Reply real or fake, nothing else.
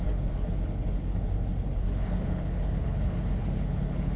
fake